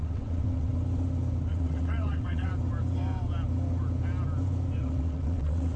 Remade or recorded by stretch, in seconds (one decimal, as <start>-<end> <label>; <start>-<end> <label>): 0.0-0.7 remade; 0.7-1.5 recorded; 1.5-2.5 remade; 2.5-4.8 recorded; 4.8-5.8 remade